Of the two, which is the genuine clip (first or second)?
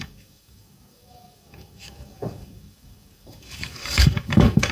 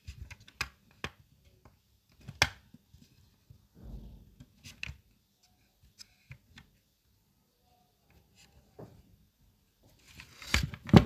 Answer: second